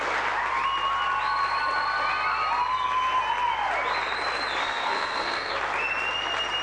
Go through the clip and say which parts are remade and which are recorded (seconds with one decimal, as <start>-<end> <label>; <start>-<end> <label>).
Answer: 0.0-4.6 recorded; 4.6-5.5 remade; 5.5-6.6 recorded